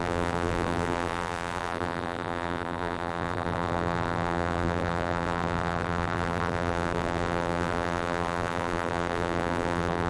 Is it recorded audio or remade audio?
remade